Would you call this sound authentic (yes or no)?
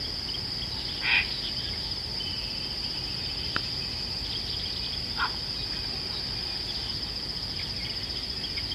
yes